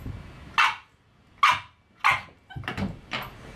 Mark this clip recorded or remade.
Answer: recorded